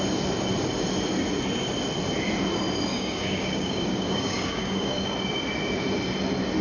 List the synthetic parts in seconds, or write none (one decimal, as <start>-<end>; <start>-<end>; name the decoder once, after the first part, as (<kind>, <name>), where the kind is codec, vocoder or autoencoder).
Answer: 2.9-5.1 (codec, DAC)